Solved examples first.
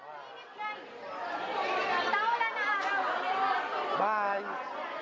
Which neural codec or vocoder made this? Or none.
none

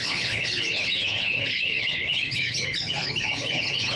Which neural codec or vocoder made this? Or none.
codec, HILCodec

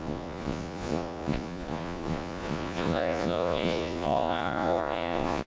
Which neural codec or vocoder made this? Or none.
vocoder, Vocos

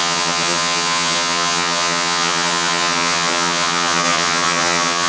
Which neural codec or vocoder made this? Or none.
vocoder, HiFi-GAN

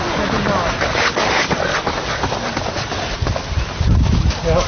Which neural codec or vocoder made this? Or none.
none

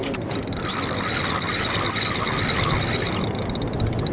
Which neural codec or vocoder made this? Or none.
none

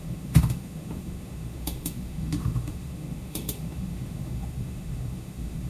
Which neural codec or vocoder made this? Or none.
autoencoder, DAC-VAE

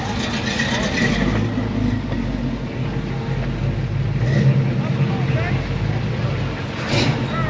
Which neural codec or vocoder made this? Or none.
none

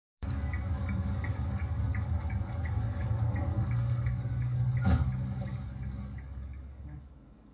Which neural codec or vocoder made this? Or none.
codec, DAC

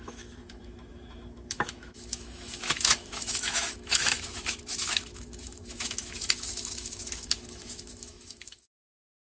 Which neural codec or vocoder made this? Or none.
autoencoder, DAC-VAE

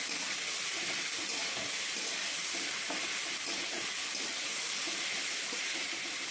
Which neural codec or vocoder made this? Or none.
none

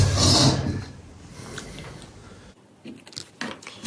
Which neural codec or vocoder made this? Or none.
none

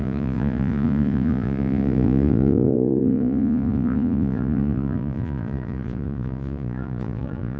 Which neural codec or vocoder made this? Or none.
vocoder, Vocos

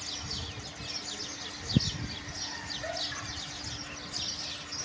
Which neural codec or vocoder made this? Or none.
none